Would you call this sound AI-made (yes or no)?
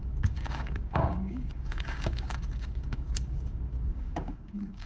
yes